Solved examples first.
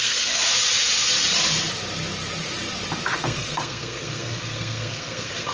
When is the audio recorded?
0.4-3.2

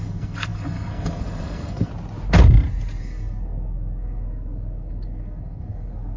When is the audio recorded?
1.9-3.0

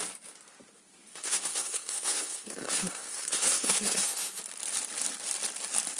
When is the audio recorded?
0.0-1.1; 4.4-6.0